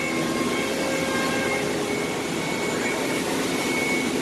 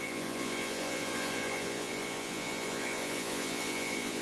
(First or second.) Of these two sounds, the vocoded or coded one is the second